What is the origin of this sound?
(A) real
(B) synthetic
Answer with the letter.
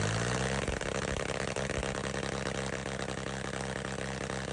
A